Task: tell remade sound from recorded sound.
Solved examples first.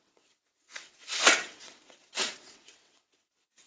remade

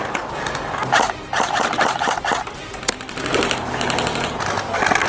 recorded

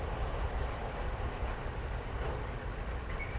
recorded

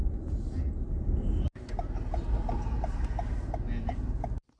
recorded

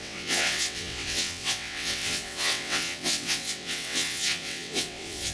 remade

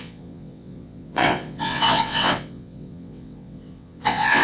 remade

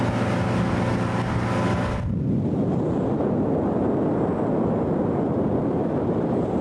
recorded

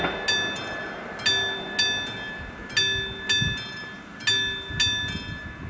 recorded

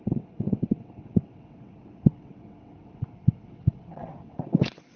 remade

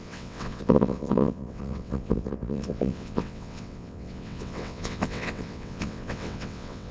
remade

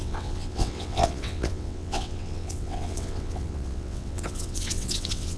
remade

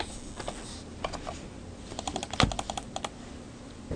recorded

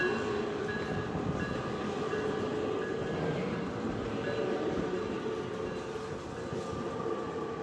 recorded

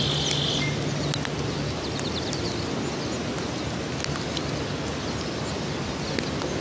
recorded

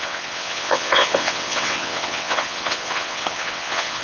remade